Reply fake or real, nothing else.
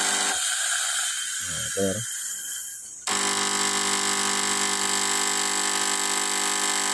real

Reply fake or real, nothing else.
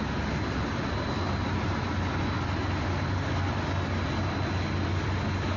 real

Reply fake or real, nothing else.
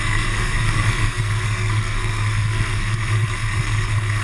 fake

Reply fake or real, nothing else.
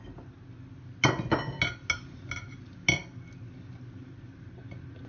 real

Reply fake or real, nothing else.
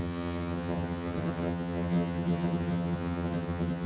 fake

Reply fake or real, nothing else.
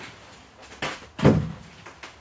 real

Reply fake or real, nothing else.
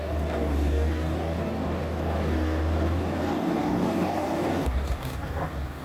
fake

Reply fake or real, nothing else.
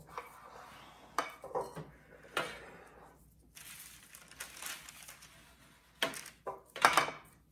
real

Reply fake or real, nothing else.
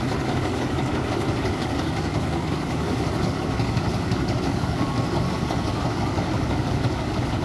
fake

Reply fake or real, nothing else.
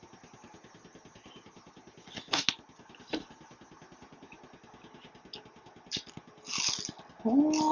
real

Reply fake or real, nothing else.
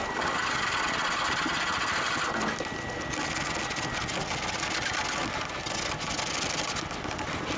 real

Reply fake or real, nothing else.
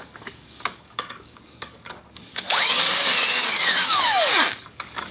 fake